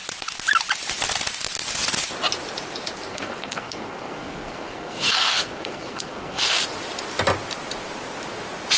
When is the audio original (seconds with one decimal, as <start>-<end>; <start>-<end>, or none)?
0.0-3.1; 6.5-8.8